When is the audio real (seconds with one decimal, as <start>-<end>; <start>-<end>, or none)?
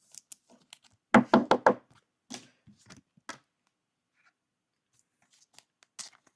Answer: 0.0-6.4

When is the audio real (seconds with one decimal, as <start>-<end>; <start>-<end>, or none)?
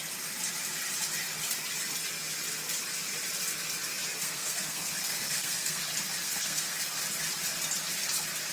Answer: 0.0-4.2; 5.8-6.2; 6.8-8.5